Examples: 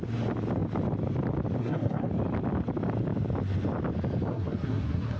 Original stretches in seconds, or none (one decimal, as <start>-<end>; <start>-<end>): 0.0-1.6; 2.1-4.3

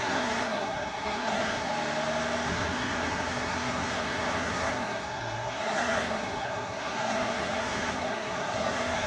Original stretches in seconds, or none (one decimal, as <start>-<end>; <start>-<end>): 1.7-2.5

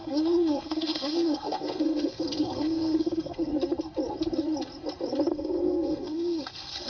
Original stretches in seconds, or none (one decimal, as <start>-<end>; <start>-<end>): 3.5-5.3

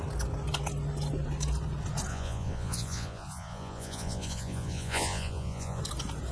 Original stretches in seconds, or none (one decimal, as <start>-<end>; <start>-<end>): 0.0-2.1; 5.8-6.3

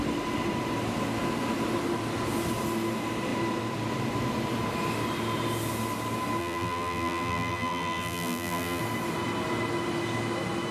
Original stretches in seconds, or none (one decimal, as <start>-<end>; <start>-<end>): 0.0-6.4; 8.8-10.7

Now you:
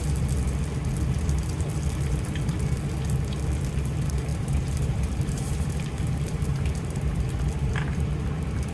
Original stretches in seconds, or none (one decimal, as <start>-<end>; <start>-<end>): 0.0-4.3; 7.0-8.7